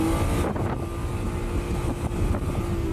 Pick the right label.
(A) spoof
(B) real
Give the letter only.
B